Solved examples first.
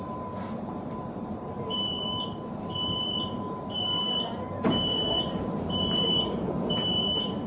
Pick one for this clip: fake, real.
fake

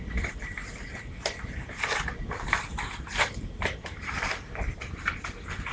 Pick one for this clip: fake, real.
fake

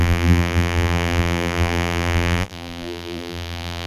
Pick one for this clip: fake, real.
fake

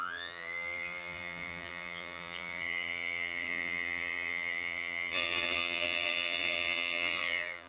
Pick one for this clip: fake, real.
fake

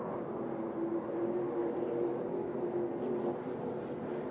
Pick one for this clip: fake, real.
real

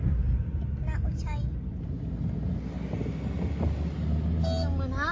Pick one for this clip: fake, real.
real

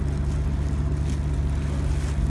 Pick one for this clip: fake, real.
real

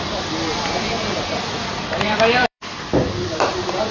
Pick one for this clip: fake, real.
fake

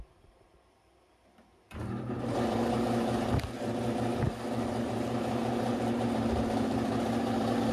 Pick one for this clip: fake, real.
fake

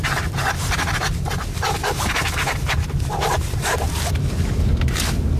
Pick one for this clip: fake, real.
fake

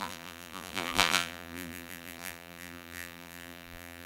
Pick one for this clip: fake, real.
fake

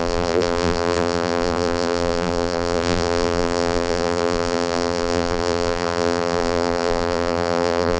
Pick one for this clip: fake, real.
fake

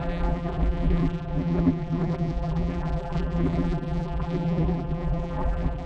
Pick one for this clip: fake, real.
fake